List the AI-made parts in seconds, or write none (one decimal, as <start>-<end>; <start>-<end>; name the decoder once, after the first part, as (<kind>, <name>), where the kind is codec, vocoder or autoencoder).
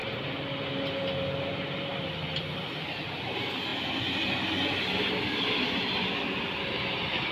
none